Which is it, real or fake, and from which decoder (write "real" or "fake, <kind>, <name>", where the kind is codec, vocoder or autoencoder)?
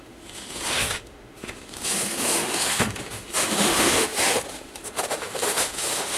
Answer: fake, autoencoder, DAC-VAE